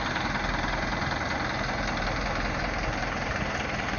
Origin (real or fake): fake